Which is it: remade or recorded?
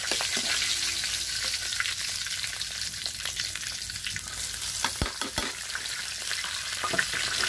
recorded